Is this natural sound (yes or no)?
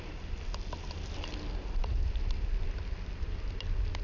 yes